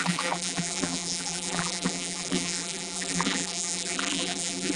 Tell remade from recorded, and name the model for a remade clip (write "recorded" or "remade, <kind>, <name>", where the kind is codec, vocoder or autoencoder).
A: remade, vocoder, BigVGAN v2